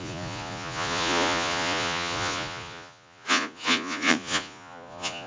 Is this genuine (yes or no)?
no